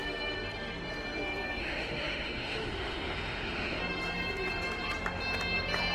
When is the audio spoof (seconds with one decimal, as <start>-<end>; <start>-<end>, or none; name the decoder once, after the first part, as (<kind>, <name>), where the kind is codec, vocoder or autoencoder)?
1.6-3.8 (autoencoder, DAC-VAE)